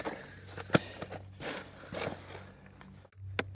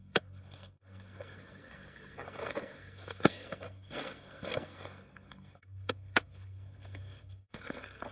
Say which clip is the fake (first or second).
second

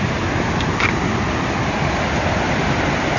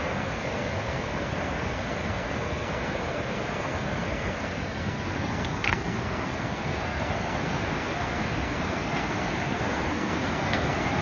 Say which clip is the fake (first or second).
second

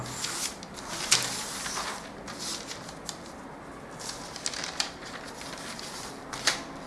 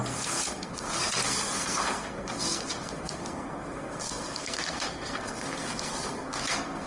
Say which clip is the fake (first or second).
second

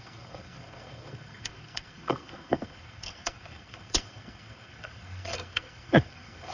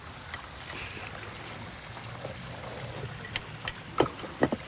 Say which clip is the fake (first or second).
first